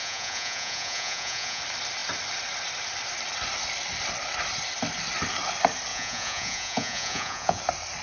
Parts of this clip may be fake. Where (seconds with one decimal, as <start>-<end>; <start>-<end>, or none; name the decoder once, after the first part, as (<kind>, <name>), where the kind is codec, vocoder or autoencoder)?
0.0-1.6 (vocoder, Vocos); 5.9-7.6